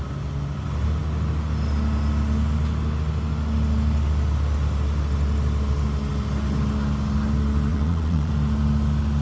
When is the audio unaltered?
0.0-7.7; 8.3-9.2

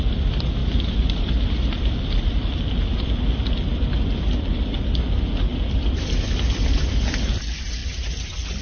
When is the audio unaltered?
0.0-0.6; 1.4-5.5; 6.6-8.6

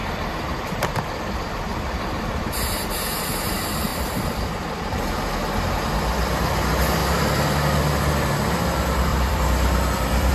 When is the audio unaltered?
3.0-3.9; 4.5-7.0; 7.8-9.1

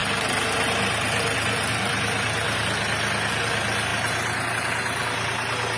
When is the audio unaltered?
0.0-5.8

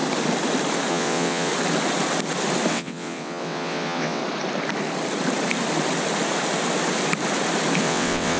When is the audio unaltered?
0.0-0.9; 1.5-2.7; 4.2-7.8

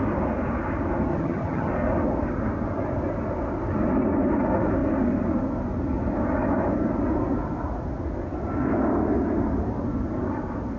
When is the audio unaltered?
0.0-1.1; 1.7-10.8